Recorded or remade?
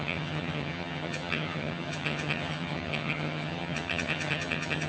remade